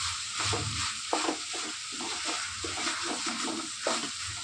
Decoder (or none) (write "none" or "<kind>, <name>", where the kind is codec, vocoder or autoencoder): none